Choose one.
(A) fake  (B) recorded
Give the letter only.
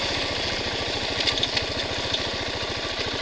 B